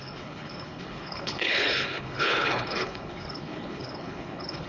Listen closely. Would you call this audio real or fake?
fake